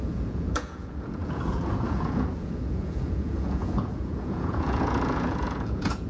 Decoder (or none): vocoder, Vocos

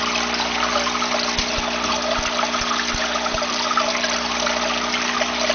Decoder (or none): none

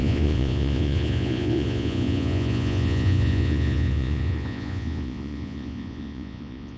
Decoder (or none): vocoder, Vocos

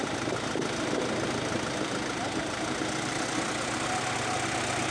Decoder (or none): none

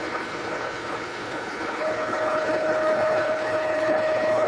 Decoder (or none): codec, HILCodec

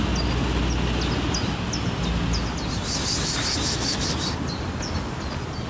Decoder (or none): none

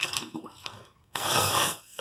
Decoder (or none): codec, SNAC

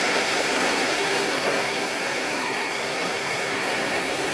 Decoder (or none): codec, SNAC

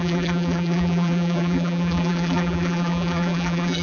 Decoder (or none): vocoder, BigVGAN v2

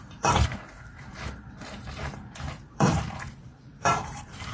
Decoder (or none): vocoder, BigVGAN v2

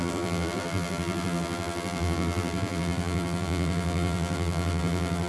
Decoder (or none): vocoder, BigVGAN v2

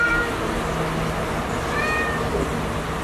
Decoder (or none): none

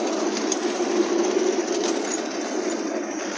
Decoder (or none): none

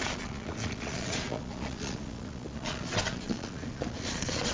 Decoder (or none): vocoder, Vocos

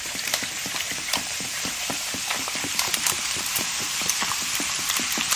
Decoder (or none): vocoder, BigVGAN v2